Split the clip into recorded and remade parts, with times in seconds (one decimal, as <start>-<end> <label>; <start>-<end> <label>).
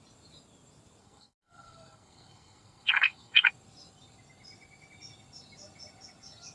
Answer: 0.0-1.0 recorded; 1.0-3.5 remade; 3.5-6.5 recorded